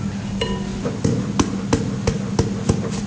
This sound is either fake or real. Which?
real